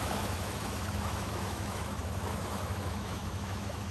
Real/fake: fake